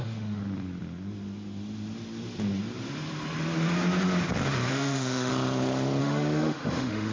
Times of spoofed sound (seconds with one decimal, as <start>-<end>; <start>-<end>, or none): 0.0-0.4; 4.7-5.3; 6.0-7.1